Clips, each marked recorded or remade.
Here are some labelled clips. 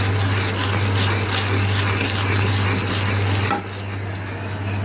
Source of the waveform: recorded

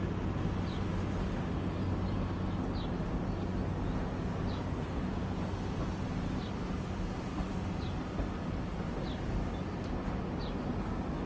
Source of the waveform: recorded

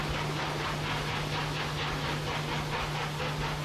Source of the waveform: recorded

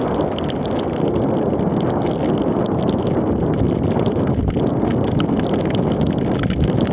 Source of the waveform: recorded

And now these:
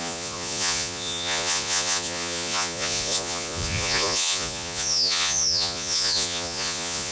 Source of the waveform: remade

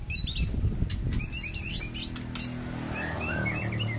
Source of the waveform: recorded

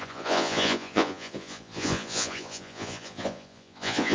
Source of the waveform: remade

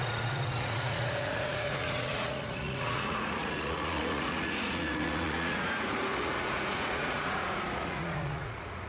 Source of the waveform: remade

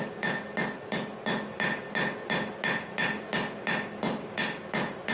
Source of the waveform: recorded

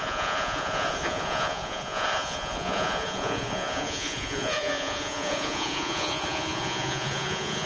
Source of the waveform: remade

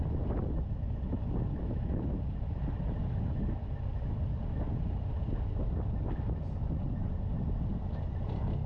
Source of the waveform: recorded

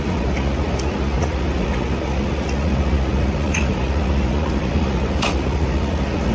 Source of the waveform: remade